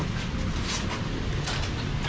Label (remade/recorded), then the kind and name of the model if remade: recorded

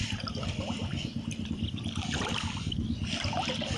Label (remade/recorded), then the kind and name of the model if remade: recorded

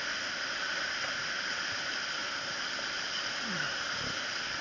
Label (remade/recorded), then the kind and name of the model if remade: recorded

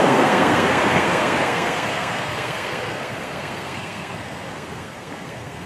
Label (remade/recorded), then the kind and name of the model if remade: remade, codec, SNAC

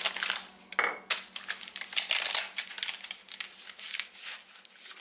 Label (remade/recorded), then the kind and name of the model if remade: recorded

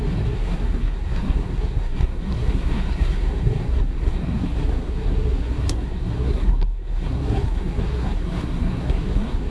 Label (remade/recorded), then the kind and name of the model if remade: remade, codec, SNAC